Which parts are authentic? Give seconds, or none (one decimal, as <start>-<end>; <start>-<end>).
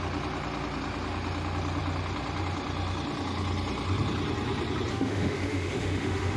0.0-4.9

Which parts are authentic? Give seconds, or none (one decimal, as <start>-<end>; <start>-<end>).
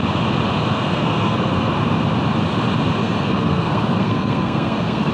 0.0-0.7; 1.7-3.0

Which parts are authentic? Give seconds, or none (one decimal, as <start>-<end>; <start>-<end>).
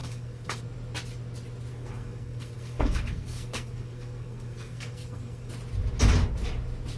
0.6-1.7; 5.5-7.0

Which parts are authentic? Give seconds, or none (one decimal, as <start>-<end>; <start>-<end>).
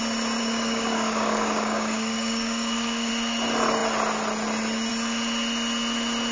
0.0-0.4; 3.1-6.3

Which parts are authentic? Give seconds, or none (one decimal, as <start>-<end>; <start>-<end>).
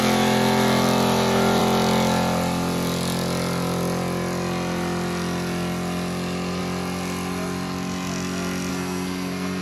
0.0-8.7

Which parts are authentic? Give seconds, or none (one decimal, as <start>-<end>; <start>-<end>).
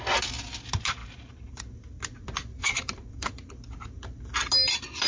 0.0-1.0; 1.6-2.5; 4.2-5.1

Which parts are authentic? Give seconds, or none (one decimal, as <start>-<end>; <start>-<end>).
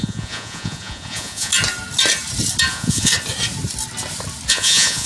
1.5-2.7; 3.1-4.5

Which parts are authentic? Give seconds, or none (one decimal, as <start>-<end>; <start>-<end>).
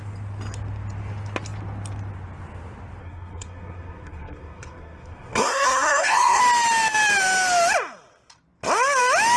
0.0-3.0; 6.4-9.4